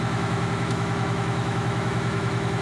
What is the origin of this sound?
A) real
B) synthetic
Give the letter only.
B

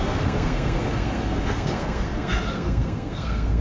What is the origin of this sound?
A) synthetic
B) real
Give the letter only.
A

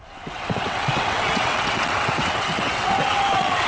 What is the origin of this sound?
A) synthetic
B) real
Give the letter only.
A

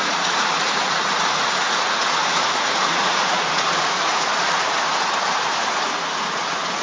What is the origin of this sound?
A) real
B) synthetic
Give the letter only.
B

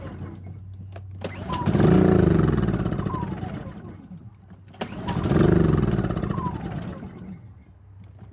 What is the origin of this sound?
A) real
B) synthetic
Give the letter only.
A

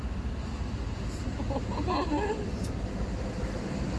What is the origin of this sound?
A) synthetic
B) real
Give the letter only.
B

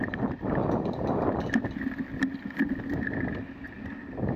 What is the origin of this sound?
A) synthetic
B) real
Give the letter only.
B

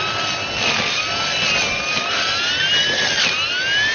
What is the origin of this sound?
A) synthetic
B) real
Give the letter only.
B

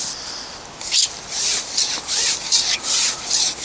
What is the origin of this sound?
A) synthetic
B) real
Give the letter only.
B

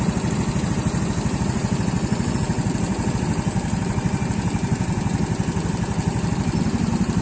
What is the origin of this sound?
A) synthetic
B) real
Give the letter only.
B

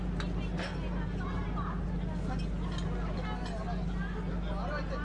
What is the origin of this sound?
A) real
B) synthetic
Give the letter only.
A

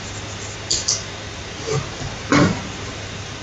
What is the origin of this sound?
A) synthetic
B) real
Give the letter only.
B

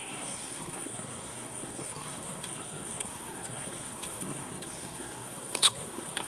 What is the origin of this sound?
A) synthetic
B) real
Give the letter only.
A